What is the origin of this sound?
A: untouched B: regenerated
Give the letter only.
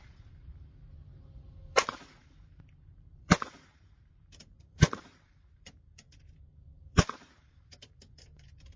B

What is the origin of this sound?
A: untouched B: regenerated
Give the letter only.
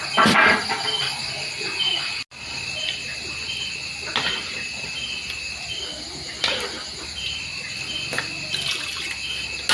A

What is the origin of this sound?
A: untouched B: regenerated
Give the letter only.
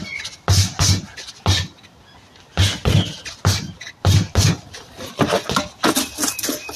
A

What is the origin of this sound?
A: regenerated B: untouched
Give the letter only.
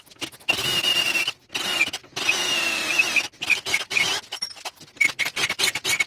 B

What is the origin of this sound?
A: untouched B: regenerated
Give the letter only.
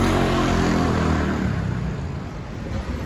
A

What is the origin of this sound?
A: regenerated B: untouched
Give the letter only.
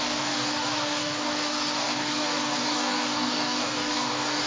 A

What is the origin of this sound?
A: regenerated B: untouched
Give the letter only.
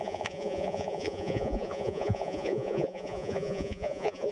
A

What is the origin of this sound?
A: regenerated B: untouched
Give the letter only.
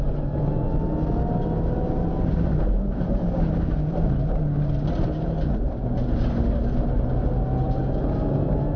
B